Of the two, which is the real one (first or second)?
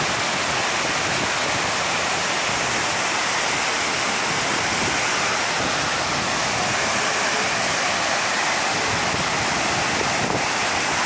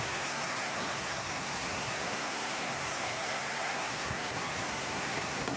first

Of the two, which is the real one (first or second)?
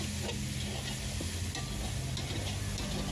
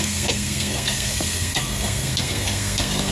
first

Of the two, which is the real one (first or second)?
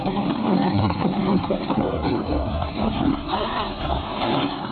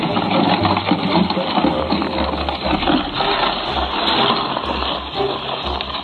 second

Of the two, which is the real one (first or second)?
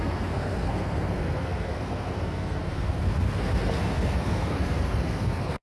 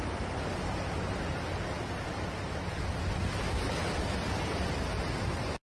second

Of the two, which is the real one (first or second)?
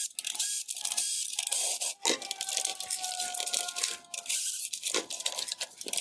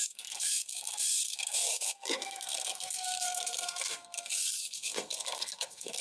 first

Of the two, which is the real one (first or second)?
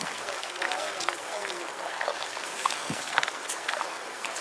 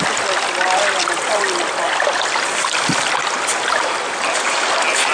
second